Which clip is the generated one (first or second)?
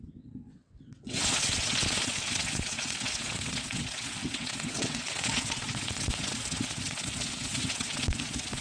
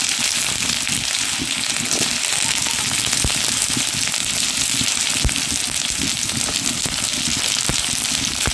first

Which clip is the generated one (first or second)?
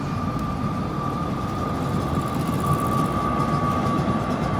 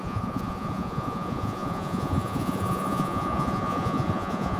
second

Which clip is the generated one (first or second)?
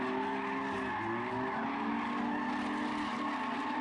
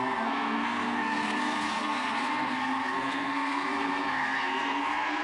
second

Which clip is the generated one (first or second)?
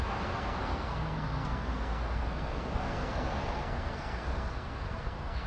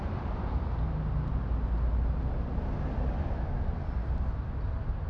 first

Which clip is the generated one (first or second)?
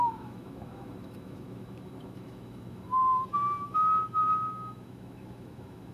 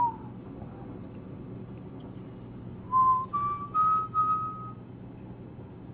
first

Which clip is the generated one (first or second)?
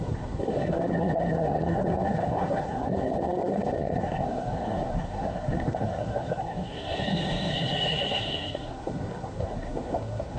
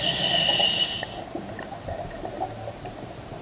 first